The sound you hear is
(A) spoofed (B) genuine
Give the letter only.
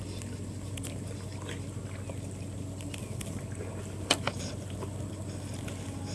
B